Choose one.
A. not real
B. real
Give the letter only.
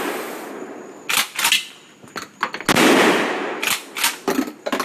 B